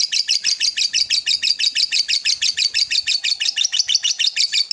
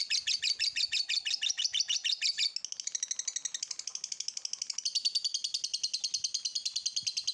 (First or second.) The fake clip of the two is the first